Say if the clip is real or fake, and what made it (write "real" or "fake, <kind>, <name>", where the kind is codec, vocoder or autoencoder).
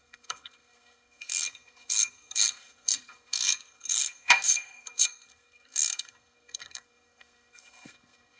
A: fake, codec, SNAC